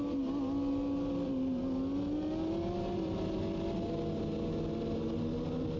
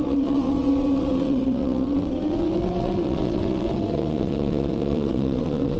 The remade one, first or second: second